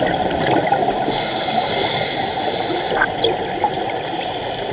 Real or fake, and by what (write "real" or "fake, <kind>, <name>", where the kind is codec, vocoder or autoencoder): real